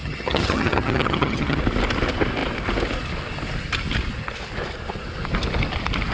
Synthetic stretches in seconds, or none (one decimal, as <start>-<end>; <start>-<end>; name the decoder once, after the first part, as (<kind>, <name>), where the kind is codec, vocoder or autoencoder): 0.0-1.6 (vocoder, HiFi-GAN)